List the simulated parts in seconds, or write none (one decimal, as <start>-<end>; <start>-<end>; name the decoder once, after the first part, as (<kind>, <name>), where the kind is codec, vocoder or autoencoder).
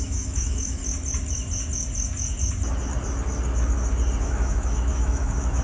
0.0-0.8 (autoencoder, DAC-VAE); 4.2-5.6